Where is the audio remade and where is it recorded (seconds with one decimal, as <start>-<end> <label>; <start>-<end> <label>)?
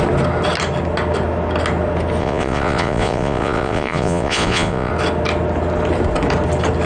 0.0-2.2 recorded; 2.2-4.9 remade; 4.9-6.9 recorded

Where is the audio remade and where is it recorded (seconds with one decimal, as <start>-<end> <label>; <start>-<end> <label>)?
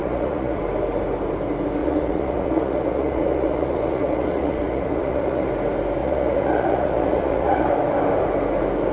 0.0-0.6 remade; 0.6-1.8 recorded; 1.8-5.5 remade; 5.5-6.0 recorded; 6.0-7.7 remade; 7.7-8.9 recorded